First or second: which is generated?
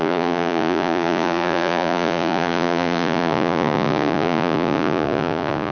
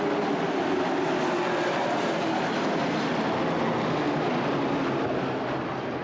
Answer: first